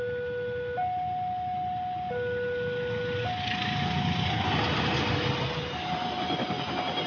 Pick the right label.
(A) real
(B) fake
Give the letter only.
A